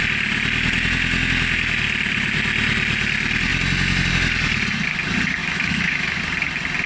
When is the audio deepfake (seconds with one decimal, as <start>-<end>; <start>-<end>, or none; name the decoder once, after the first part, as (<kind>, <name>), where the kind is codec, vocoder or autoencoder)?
5.4-6.2 (autoencoder, DAC-VAE)

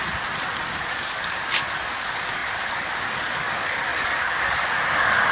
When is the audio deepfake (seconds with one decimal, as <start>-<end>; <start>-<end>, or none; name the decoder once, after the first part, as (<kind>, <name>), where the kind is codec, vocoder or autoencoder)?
0.7-5.3 (codec, DAC)